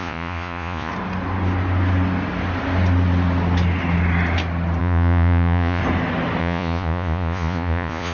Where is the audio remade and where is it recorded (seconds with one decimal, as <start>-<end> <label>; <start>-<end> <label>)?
0.0-0.9 remade; 0.9-4.8 recorded; 4.8-5.8 remade; 5.8-6.4 recorded; 6.4-8.1 remade